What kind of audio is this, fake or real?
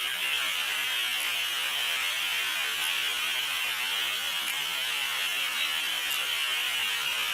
real